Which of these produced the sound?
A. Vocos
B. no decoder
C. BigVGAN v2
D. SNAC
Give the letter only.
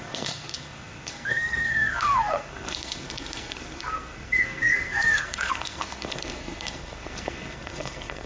D